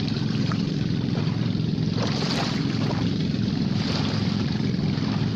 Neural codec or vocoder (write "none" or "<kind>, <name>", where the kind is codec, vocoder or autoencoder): vocoder, BigVGAN v2